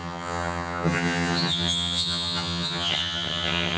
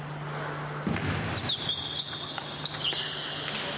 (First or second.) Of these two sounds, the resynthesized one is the first